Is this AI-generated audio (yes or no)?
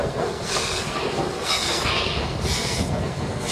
yes